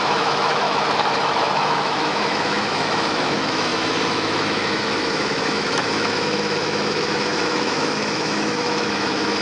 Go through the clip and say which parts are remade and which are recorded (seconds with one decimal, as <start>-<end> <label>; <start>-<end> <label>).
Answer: 0.0-9.4 remade